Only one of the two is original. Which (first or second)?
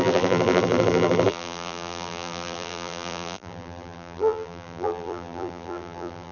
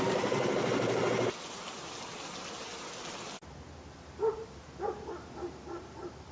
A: second